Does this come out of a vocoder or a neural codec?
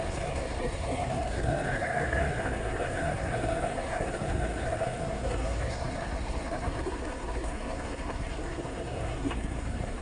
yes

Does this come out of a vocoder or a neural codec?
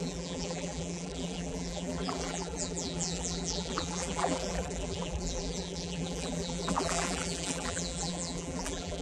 yes